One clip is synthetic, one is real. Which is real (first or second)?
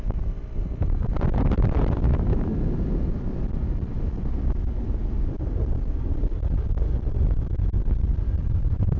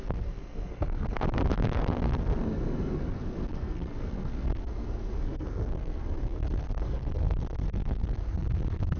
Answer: first